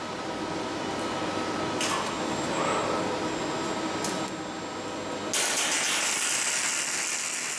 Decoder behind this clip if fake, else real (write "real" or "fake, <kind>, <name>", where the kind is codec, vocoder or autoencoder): real